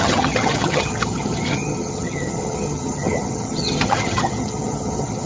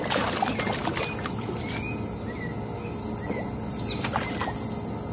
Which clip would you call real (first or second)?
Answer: second